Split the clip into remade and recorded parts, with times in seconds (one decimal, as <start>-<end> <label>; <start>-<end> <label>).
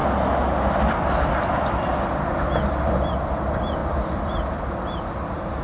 0.0-0.6 recorded; 0.6-5.6 remade